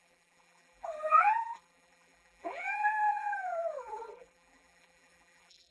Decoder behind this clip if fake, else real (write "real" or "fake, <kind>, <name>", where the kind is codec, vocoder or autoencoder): fake, vocoder, BigVGAN v2